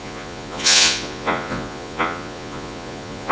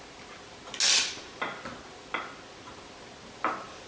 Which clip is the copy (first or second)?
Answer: first